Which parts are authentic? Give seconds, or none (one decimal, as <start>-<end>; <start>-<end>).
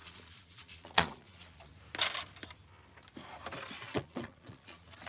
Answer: 1.7-3.8